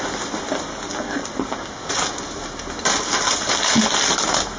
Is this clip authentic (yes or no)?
yes